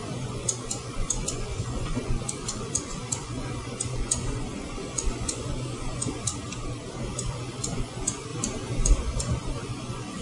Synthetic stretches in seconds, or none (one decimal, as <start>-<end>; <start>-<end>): 0.0-6.3; 7.0-8.3; 9.0-10.2